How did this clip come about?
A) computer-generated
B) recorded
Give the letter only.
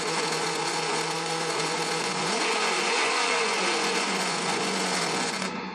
A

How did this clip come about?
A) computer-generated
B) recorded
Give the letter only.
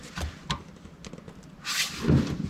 B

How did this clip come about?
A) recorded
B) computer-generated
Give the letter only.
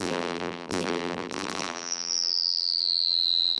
B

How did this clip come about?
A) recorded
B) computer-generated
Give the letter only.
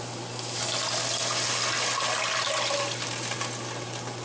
A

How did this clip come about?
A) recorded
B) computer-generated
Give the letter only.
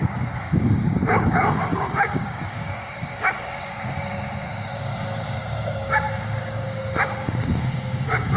B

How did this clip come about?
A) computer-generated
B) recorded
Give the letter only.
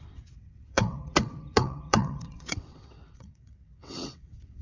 A